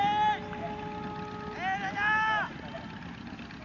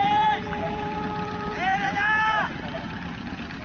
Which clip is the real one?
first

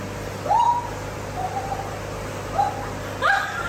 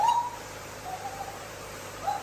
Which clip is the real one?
first